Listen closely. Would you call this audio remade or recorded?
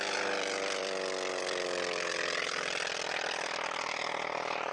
remade